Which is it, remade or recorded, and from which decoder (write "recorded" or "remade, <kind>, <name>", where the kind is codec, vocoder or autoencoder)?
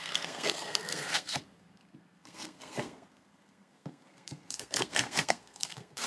remade, codec, SNAC